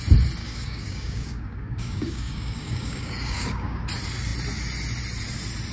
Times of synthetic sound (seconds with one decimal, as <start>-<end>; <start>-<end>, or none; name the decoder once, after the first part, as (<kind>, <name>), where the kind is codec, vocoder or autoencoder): 0.4-3.8 (codec, DAC)